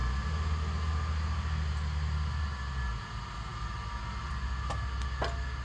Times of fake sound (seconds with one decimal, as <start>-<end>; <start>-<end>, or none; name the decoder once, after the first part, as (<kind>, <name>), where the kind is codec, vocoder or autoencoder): none